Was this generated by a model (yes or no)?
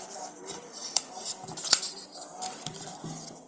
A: no